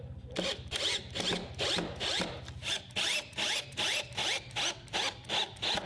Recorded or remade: recorded